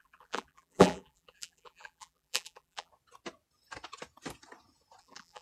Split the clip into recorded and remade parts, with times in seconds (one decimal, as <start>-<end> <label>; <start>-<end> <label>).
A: 0.0-2.9 remade; 2.9-5.0 recorded; 5.0-5.4 remade